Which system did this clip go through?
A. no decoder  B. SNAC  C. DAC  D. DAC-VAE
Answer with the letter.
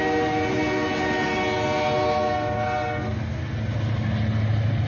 A